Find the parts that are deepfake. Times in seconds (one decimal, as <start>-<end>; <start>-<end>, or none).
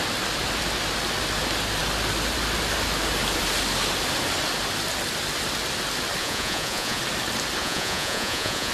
6.2-7.0; 7.6-8.7